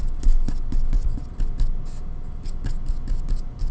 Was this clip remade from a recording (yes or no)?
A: no